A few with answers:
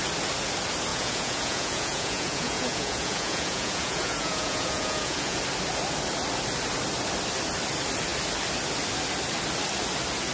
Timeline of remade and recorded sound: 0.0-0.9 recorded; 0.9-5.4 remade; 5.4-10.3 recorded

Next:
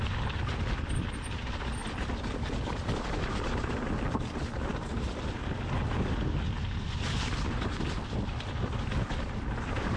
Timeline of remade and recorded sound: 0.0-10.0 recorded

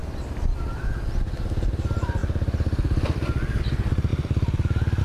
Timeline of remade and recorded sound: 0.0-1.7 recorded; 1.7-2.2 remade; 2.2-3.6 recorded; 3.6-5.0 remade

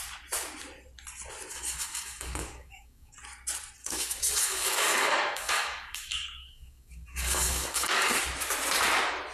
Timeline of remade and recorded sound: 0.0-1.5 recorded; 1.5-3.1 remade; 3.1-3.8 recorded; 3.8-8.2 remade; 8.2-9.3 recorded

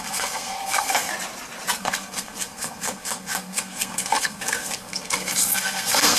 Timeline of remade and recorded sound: 0.0-1.1 remade; 1.1-1.8 recorded; 1.8-6.2 remade